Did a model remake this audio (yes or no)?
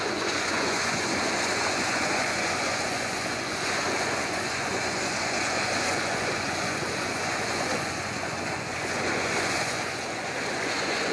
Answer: yes